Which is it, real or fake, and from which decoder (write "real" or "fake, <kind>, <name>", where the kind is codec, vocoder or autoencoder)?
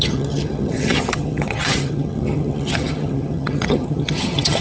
fake, vocoder, HiFi-GAN